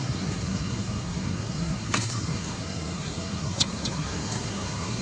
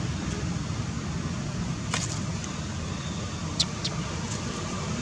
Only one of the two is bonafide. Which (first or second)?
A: second